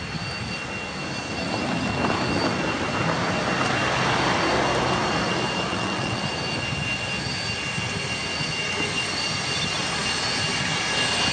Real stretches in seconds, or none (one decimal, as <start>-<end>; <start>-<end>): 0.0-5.7; 6.2-11.3